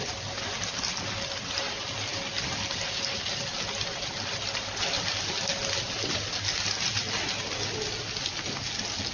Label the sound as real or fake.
real